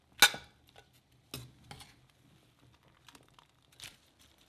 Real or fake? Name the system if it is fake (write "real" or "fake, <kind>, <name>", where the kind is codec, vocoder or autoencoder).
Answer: real